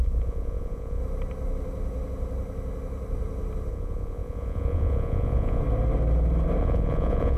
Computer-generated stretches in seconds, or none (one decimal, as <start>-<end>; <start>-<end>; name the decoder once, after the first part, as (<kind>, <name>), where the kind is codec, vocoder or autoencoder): 0.0-1.0 (vocoder, Vocos); 3.7-5.6; 6.6-7.4